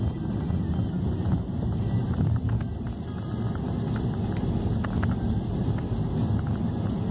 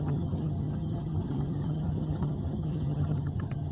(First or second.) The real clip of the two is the first